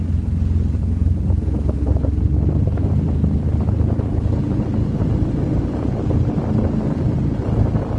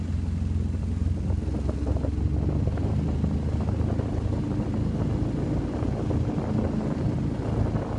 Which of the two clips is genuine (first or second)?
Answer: second